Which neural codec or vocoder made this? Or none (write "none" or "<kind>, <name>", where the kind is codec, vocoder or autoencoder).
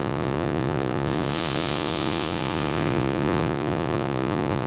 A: vocoder, Vocos